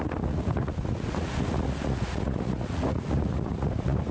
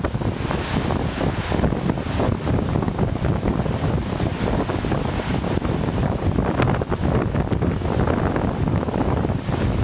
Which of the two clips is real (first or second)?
second